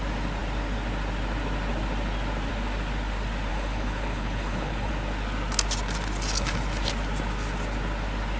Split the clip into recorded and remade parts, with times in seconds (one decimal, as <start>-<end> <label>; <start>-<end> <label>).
0.0-3.5 recorded; 3.5-4.9 remade; 4.9-8.4 recorded